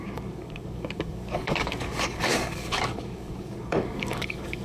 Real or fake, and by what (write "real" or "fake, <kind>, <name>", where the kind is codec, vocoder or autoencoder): fake, codec, DAC